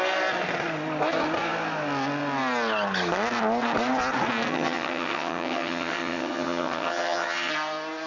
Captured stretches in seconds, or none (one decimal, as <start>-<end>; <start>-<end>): 0.0-4.5; 7.5-8.1